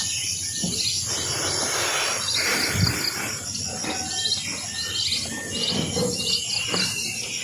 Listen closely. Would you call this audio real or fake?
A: real